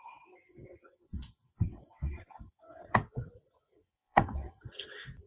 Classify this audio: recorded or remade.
remade